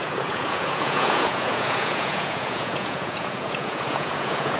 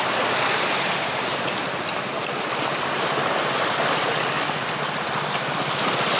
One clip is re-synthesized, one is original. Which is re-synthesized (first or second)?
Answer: first